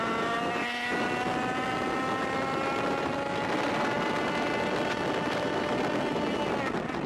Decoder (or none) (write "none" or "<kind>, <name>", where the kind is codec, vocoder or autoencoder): none